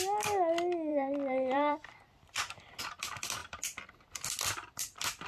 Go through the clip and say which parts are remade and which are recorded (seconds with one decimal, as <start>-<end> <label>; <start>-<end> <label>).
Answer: 0.0-0.9 recorded; 0.9-2.8 remade; 2.8-5.3 recorded